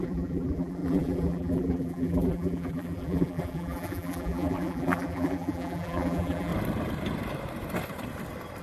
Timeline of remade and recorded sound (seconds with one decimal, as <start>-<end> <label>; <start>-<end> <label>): 0.0-6.5 remade; 6.5-8.6 recorded

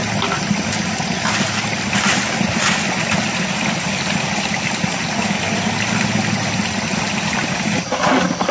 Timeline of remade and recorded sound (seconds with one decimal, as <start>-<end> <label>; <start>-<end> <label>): 0.0-8.5 recorded

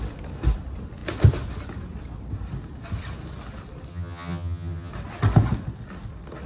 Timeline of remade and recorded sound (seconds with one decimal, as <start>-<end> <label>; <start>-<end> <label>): 0.0-3.9 recorded; 3.9-4.9 remade; 4.9-6.5 recorded

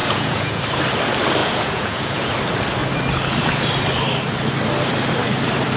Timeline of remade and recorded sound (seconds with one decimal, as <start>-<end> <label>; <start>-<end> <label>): 0.0-0.6 remade; 0.6-1.4 recorded; 1.4-2.3 remade; 2.3-5.8 recorded

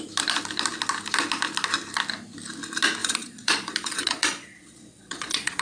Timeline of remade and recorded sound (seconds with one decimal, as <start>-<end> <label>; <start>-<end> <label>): 0.0-3.0 recorded; 3.0-5.6 remade